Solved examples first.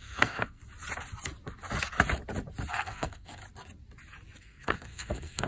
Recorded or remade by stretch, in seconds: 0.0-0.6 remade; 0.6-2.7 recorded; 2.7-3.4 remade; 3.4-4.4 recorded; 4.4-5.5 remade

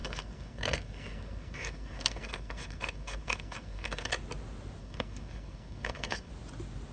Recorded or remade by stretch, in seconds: 0.0-4.1 remade; 4.1-4.8 recorded; 4.8-6.3 remade; 6.3-6.9 recorded